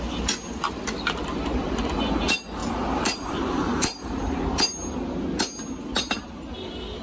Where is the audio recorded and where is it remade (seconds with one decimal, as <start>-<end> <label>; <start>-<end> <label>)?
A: 0.0-2.6 recorded; 2.6-4.4 remade; 4.4-7.0 recorded